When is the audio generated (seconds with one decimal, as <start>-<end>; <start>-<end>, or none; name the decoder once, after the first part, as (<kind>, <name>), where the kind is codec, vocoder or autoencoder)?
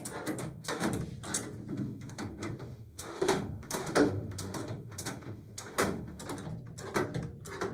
0.4-0.9 (autoencoder, DAC-VAE); 1.7-6.2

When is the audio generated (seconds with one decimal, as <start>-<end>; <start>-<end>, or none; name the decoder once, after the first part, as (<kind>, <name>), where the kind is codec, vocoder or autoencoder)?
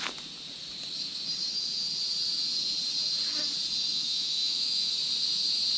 3.9-4.9 (autoencoder, DAC-VAE)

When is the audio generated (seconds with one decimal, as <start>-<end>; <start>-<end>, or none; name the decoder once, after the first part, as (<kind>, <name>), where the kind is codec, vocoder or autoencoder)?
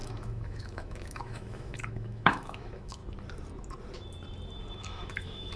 0.0-3.0 (autoencoder, DAC-VAE); 4.8-5.6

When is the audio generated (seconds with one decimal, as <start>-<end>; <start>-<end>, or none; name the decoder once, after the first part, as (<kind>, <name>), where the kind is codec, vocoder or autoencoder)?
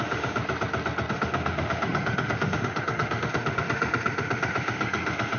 0.0-0.4 (autoencoder, DAC-VAE); 1.1-5.4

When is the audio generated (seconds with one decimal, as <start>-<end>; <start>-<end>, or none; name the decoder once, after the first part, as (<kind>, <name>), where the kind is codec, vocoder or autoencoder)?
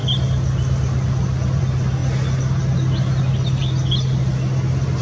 none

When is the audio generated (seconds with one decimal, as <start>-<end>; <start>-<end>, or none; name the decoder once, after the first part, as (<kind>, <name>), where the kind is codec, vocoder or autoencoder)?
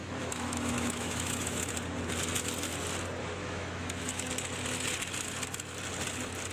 0.0-1.7 (autoencoder, DAC-VAE); 3.4-4.3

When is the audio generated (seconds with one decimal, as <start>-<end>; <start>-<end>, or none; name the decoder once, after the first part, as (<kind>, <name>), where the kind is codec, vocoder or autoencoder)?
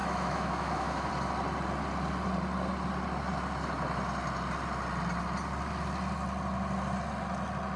0.0-1.1 (autoencoder, DAC-VAE)